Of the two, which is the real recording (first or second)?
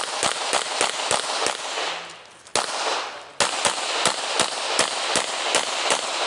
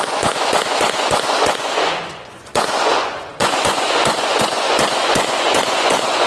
first